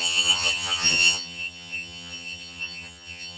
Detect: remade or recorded remade